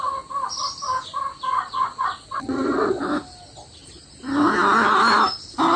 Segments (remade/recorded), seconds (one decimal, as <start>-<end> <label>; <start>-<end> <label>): 0.0-1.6 recorded; 1.6-3.0 remade; 3.0-5.8 recorded